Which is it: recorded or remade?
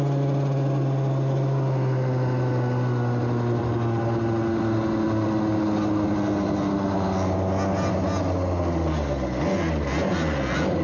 recorded